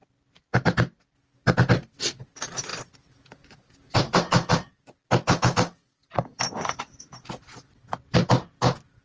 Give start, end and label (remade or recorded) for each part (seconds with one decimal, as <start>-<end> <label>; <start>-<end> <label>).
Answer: 0.0-2.7 recorded; 2.7-4.7 remade; 4.7-9.0 recorded